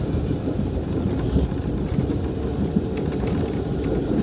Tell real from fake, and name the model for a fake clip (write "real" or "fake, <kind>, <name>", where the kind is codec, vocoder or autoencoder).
real